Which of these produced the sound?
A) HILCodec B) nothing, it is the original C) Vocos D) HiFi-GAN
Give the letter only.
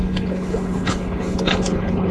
A